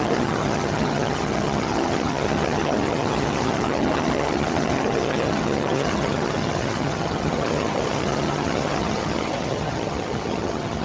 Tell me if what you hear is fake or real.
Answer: fake